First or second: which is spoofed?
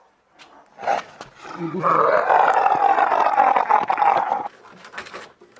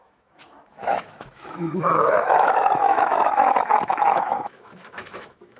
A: second